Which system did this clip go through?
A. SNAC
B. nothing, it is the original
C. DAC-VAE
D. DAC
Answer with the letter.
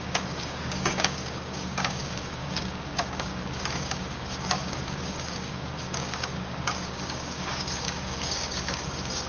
D